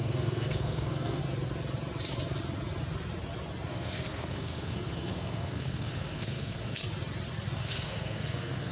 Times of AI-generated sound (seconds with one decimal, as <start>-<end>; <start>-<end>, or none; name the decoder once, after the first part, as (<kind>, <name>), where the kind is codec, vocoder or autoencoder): 0.0-1.2 (codec, SNAC); 3.7-6.8; 7.6-8.7